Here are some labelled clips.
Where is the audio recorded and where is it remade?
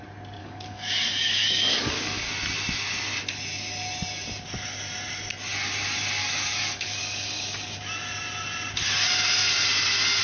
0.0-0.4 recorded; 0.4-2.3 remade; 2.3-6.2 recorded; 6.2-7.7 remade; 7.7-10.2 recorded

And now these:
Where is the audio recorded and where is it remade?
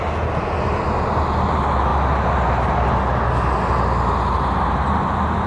0.0-5.5 recorded